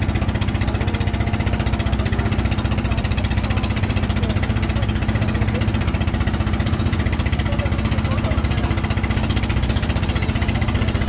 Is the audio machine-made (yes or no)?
no